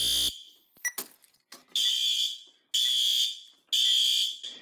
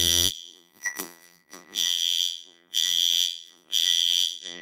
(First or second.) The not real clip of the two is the second